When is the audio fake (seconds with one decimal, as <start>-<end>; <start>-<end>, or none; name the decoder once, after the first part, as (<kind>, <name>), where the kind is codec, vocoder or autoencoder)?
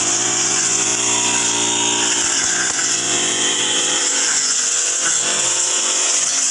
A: 0.0-0.9 (vocoder, Vocos); 2.4-6.5